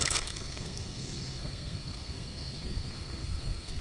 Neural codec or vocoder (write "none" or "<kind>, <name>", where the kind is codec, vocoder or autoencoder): codec, SNAC